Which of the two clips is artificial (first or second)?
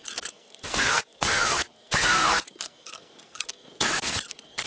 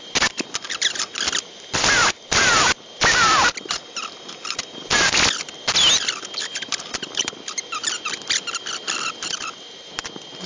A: first